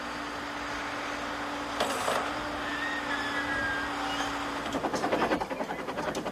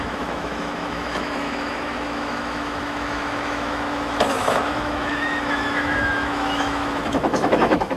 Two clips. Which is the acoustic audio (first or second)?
first